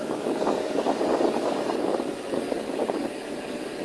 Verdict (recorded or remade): remade